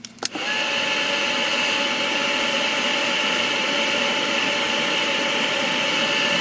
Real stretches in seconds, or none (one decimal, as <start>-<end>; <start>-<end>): 0.0-6.4